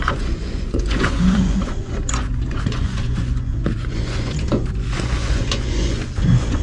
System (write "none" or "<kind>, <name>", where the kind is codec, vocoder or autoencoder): vocoder, Vocos